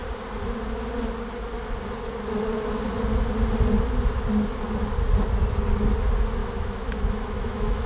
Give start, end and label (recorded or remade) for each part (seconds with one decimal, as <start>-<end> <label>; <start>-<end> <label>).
0.0-6.4 recorded; 6.4-7.9 remade

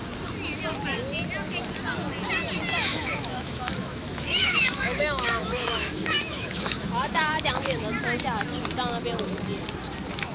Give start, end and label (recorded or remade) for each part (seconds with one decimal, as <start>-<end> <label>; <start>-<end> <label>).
0.0-2.7 recorded; 2.7-7.8 remade; 7.8-10.3 recorded

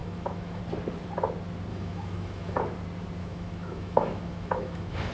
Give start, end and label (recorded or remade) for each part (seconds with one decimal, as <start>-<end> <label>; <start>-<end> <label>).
0.0-0.6 remade; 0.6-1.7 recorded; 1.7-2.6 remade; 2.6-3.2 recorded; 3.2-5.1 remade

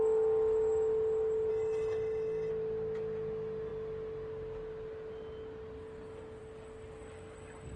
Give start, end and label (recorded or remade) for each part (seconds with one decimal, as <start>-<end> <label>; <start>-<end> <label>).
0.0-1.5 recorded; 1.5-2.5 remade; 2.5-7.8 recorded

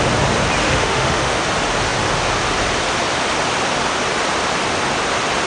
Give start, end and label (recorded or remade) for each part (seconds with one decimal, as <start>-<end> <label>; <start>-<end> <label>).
0.0-0.6 recorded; 0.6-1.4 remade; 1.4-5.5 recorded

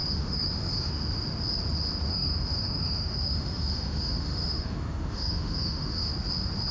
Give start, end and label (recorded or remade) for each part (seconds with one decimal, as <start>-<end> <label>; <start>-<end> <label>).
0.0-0.9 remade; 0.9-2.1 recorded; 2.1-6.1 remade; 6.1-6.7 recorded

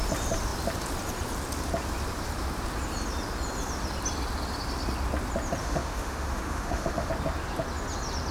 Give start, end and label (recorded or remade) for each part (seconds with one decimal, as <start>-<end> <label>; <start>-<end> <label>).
0.0-5.6 recorded; 5.6-7.1 remade; 7.1-8.3 recorded

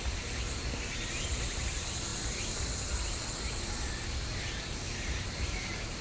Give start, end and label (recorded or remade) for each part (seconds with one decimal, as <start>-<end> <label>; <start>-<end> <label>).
0.0-6.0 recorded